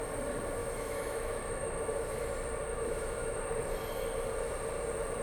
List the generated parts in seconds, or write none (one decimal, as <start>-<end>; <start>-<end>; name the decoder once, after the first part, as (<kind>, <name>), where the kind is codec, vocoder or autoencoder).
0.6-2.3 (autoencoder, DAC-VAE); 2.7-3.4